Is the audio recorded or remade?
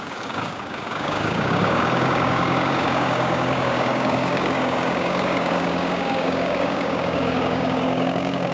remade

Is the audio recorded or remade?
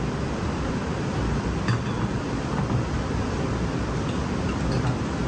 remade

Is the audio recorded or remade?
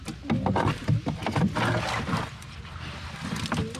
recorded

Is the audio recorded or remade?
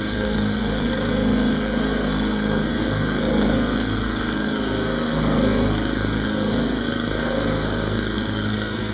remade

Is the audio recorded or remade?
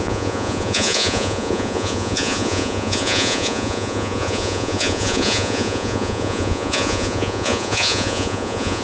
remade